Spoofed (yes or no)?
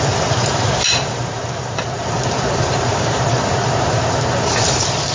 yes